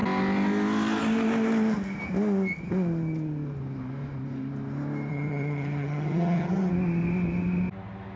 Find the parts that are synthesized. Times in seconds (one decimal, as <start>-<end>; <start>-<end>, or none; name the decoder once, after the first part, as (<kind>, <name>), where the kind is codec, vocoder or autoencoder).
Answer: 5.1-6.7 (vocoder, HiFi-GAN)